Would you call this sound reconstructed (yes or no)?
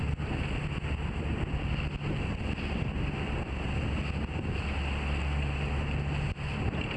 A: no